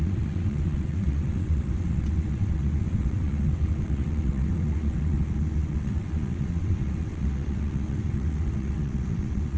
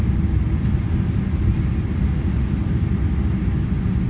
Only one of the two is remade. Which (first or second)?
first